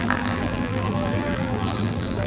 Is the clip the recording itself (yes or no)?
no